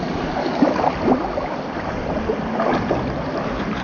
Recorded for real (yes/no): yes